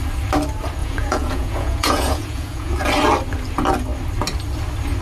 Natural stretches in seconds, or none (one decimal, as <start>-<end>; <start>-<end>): 0.0-0.8; 2.8-5.0